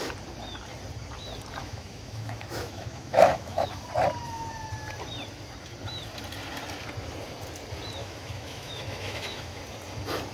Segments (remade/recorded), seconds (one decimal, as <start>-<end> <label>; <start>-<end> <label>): 0.0-1.6 recorded; 1.6-3.7 remade; 3.7-8.0 recorded; 8.0-9.6 remade; 9.6-10.3 recorded